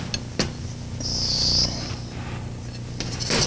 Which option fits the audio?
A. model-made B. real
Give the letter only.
B